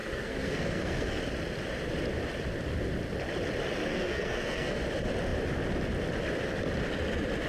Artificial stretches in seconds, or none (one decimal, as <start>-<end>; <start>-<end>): 0.0-1.2; 3.9-4.8